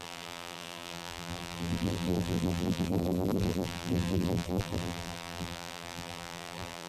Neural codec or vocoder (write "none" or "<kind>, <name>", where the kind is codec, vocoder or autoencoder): vocoder, BigVGAN v2